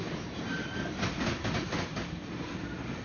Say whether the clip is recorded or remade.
recorded